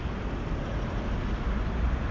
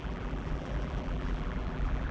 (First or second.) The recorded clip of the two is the first